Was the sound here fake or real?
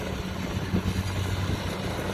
real